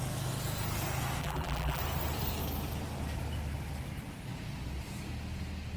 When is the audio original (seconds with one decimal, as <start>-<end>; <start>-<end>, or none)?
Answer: 0.0-1.2; 1.8-5.8